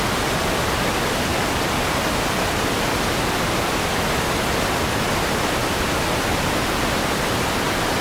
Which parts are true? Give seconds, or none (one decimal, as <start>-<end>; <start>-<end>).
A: 0.0-8.0